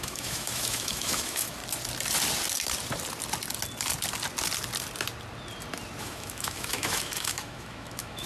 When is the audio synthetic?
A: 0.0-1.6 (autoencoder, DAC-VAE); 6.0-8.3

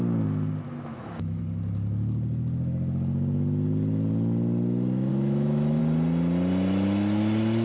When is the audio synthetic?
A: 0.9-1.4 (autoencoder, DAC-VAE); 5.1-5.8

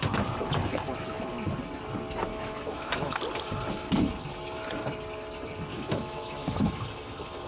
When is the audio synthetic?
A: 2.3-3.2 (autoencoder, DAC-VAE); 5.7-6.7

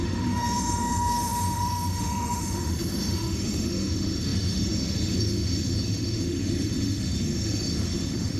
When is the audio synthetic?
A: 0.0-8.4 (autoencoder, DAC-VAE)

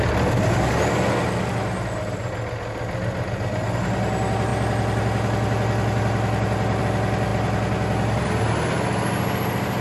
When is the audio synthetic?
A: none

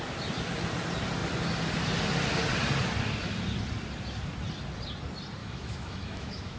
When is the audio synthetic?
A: 5.4-6.6 (autoencoder, DAC-VAE)